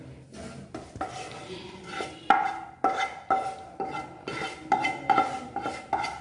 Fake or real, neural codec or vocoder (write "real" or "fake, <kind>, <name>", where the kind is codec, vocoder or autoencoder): real